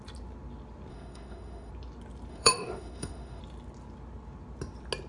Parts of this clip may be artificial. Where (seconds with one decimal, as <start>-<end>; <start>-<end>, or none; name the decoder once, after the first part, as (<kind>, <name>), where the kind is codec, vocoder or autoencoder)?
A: 0.9-1.7 (autoencoder, DAC-VAE); 2.3-3.4

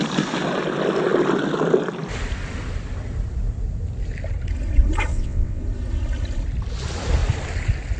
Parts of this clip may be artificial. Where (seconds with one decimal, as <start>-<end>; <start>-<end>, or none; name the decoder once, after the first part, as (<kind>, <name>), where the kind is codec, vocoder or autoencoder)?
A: 5.1-5.6 (vocoder, WaveNeXt)

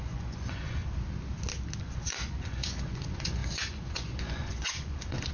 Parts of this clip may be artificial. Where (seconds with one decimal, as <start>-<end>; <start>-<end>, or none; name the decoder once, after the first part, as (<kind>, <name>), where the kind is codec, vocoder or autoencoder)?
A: 0.0-0.8 (vocoder, Vocos); 1.8-5.3

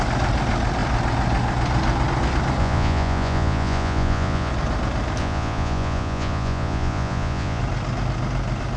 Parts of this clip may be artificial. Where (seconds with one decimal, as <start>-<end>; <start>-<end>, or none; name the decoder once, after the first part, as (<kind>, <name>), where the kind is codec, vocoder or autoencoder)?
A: 2.6-4.5 (vocoder, Vocos); 5.2-7.6